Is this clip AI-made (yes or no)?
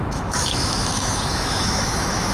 yes